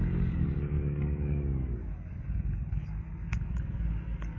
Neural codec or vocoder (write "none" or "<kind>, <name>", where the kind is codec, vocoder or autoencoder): codec, DAC